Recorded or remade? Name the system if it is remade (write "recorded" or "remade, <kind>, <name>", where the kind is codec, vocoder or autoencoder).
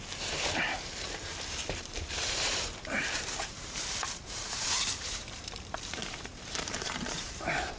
remade, vocoder, BigVGAN v2